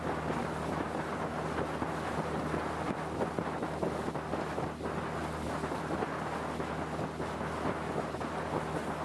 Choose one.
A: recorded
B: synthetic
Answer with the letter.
A